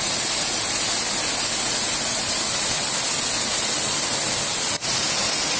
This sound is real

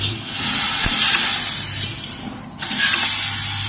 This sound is real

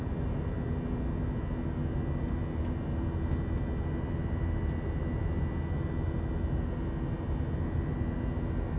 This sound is real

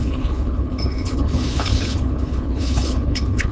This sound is fake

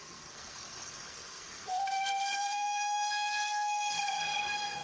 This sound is fake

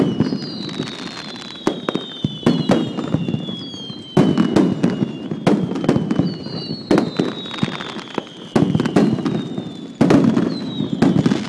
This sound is real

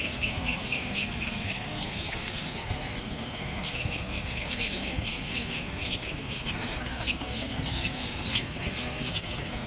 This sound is fake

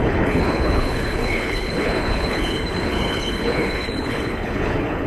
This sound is fake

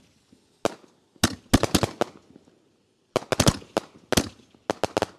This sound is real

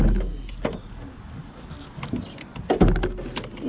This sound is real